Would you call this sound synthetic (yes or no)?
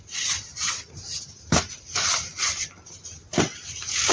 no